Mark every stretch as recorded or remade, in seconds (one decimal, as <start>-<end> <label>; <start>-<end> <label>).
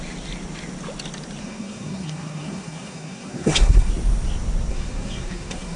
0.0-1.4 recorded; 1.4-3.9 remade; 3.9-4.7 recorded; 4.7-5.8 remade